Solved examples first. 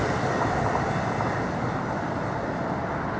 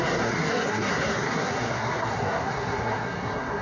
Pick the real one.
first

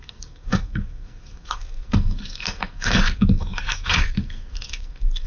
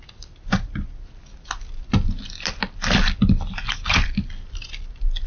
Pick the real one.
second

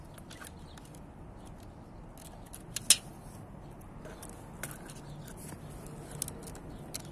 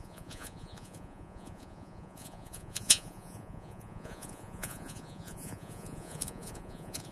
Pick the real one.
first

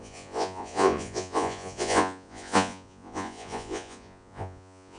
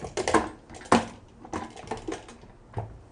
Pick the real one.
second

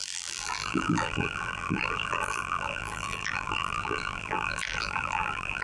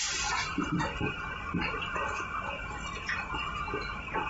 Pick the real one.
second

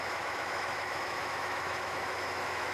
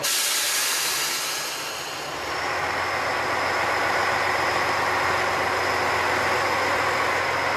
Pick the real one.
second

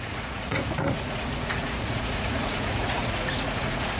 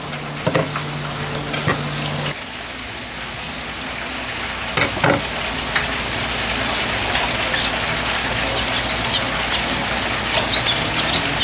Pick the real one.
second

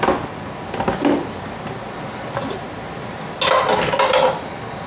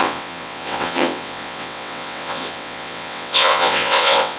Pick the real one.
first